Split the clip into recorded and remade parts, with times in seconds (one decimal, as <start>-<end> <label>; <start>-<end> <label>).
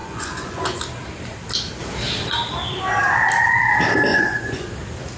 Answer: 0.0-0.8 remade; 0.8-4.1 recorded; 4.1-4.7 remade; 4.7-5.2 recorded